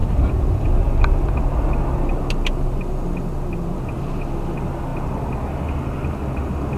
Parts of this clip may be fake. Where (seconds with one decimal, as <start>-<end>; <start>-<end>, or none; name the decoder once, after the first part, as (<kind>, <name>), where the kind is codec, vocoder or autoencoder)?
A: none